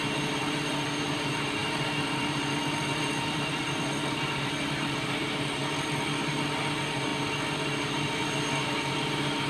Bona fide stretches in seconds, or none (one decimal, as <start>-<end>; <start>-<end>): 7.1-7.8